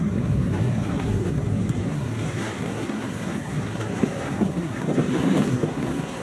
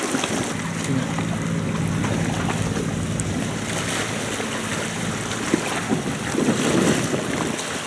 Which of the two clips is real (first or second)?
second